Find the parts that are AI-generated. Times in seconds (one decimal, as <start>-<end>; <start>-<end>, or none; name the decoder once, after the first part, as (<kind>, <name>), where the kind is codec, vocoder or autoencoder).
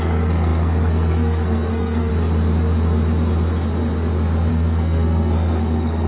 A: 0.0-2.1 (codec, SNAC); 4.5-6.1